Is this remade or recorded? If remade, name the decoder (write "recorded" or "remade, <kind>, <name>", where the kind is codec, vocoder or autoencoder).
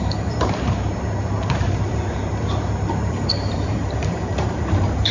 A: remade, vocoder, BigVGAN v2